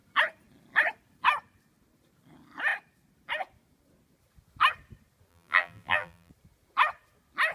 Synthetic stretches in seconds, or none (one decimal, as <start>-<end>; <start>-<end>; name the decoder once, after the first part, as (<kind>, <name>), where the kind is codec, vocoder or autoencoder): 5.3-6.3 (vocoder, BigVGAN v2)